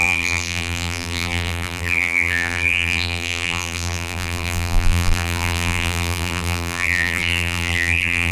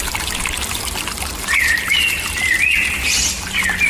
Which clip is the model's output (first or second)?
first